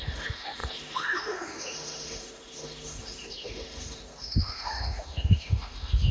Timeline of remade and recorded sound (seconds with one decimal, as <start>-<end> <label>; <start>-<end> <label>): 0.0-6.1 remade